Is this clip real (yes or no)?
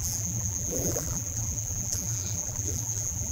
no